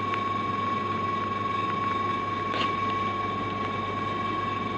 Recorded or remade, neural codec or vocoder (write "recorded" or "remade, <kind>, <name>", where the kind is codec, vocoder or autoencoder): recorded